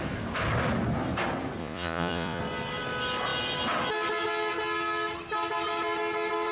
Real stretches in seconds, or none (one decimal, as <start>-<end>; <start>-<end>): 0.0-1.6; 2.4-6.5

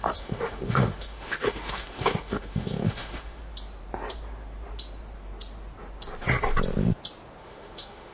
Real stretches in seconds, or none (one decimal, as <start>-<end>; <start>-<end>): 3.4-7.4

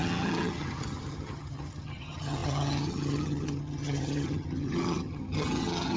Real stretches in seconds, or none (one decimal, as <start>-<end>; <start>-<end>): none